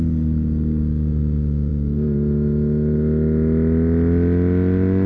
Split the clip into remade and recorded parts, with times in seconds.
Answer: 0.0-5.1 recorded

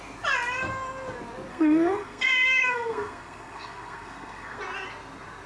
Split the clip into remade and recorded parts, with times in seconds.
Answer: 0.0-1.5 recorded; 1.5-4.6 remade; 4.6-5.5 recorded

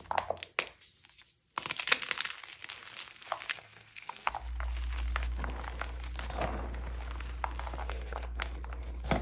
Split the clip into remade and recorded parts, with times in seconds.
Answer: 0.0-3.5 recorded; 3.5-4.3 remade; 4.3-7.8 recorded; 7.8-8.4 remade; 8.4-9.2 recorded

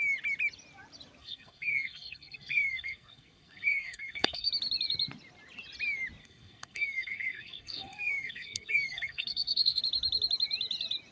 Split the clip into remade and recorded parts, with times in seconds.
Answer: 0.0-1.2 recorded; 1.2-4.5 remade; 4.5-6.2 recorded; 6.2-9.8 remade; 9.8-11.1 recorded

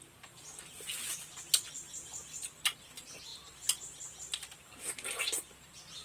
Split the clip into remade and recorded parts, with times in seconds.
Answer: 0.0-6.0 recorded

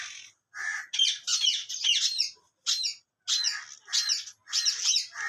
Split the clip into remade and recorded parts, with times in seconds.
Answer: 0.0-5.3 recorded

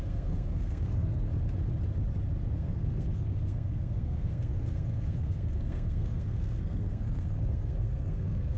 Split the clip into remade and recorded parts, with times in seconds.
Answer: 0.0-1.3 remade; 1.3-2.5 recorded; 2.5-8.6 remade

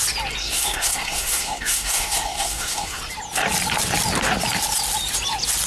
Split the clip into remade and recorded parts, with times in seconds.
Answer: 0.0-0.4 recorded; 0.4-3.0 remade; 3.0-5.7 recorded